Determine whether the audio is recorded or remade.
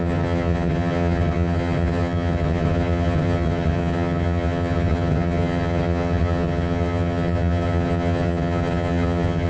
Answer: remade